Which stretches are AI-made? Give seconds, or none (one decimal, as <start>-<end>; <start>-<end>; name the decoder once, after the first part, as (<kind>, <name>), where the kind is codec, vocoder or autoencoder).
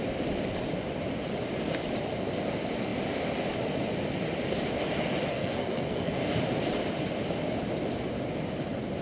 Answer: 5.3-6.2 (codec, SNAC)